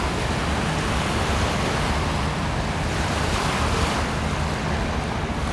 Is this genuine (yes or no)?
yes